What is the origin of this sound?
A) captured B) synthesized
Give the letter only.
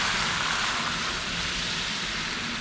A